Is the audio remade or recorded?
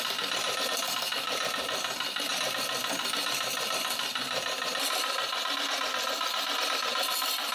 recorded